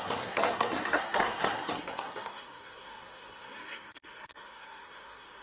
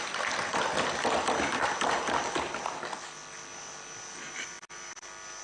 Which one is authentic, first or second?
second